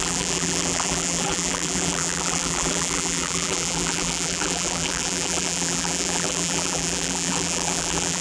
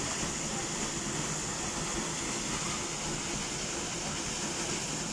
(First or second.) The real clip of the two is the second